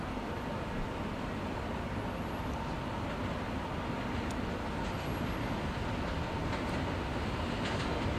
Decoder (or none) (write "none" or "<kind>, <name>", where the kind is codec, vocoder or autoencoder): none